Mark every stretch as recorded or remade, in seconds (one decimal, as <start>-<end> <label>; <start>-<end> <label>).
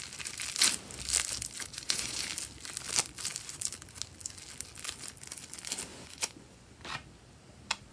0.0-1.7 recorded; 1.7-2.2 remade; 2.2-5.9 recorded; 5.9-6.7 remade; 6.7-7.9 recorded